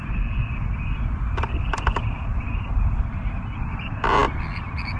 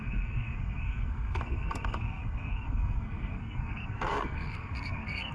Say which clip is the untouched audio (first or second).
first